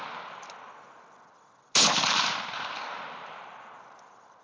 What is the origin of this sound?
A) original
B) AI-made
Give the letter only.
A